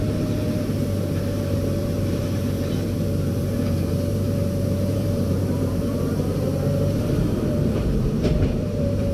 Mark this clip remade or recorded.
remade